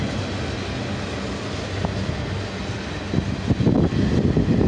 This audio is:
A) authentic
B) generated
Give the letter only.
A